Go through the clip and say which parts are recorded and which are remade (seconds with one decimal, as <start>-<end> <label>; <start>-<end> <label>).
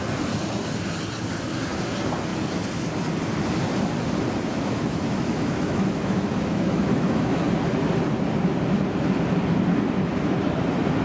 0.0-4.5 recorded; 4.5-7.4 remade; 7.4-11.0 recorded